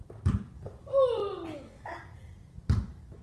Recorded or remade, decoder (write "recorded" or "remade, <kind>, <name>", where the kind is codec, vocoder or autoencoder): recorded